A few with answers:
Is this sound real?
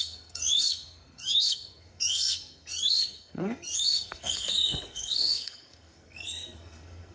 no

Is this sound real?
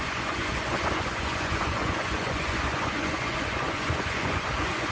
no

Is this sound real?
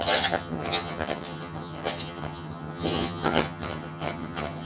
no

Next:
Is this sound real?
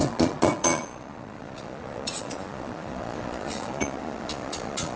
no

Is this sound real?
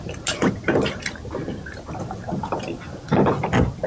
yes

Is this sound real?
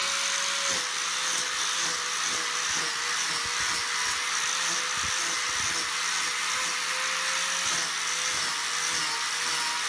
yes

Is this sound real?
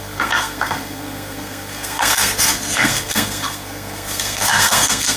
no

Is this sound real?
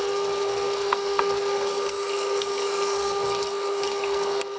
no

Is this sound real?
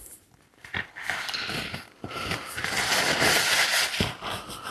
yes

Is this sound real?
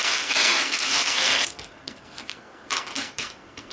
no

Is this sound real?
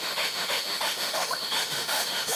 no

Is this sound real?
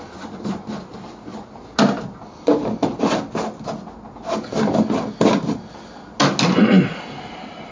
yes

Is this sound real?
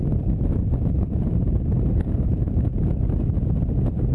yes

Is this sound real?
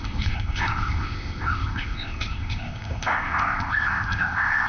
no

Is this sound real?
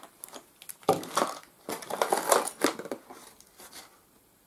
yes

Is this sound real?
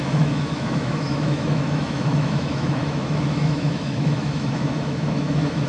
no